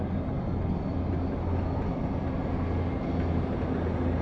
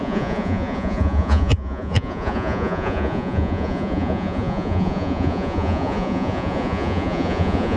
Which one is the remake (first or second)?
second